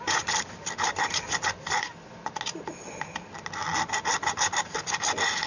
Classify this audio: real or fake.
real